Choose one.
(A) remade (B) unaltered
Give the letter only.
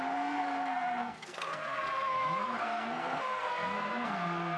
A